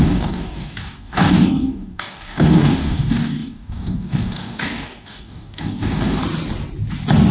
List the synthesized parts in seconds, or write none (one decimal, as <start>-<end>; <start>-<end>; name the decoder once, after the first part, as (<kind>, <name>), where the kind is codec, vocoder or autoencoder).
0.0-6.2 (codec, DAC)